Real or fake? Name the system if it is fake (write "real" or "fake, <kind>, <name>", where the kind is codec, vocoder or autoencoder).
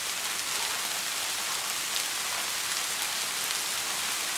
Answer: real